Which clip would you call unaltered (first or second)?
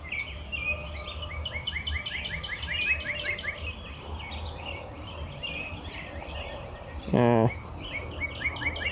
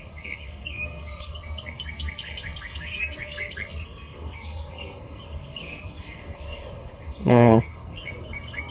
first